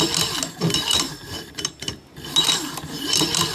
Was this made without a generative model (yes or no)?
yes